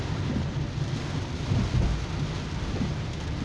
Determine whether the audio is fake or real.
real